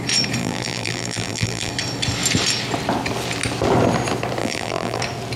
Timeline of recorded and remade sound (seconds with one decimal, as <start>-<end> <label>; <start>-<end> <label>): 0.0-0.4 recorded; 0.4-1.7 remade; 1.7-4.4 recorded; 4.4-5.0 remade; 5.0-5.4 recorded